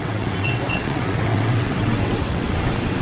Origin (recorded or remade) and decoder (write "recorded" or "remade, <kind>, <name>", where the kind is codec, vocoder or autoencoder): remade, vocoder, WaveNeXt